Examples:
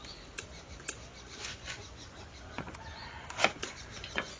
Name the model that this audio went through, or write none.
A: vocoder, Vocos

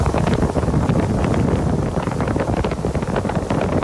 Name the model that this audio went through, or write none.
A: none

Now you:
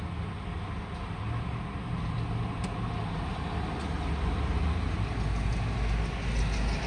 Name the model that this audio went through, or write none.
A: none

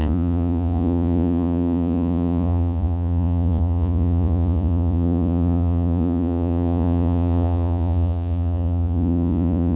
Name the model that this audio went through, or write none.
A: vocoder, Vocos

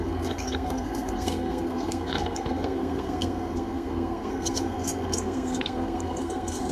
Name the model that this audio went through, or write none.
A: codec, SNAC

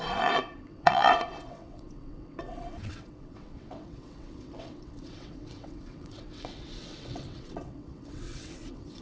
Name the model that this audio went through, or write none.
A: vocoder, WaveNeXt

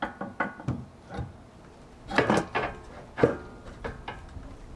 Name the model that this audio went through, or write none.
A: none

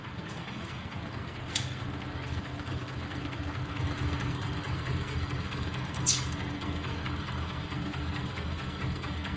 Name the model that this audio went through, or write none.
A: codec, SNAC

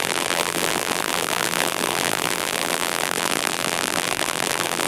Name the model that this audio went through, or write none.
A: vocoder, BigVGAN v2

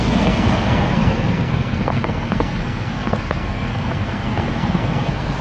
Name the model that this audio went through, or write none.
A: codec, SNAC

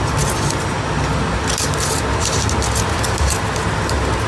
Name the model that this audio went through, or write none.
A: none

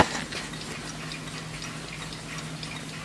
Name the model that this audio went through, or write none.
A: none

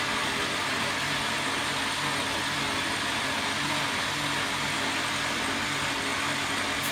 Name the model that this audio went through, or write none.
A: none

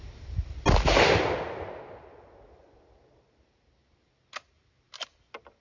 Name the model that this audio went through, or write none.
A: none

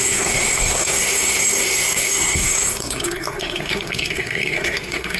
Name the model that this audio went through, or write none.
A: codec, SNAC